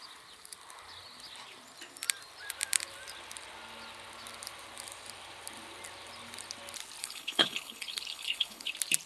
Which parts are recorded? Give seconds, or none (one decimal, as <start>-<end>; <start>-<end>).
0.0-7.0; 8.7-9.1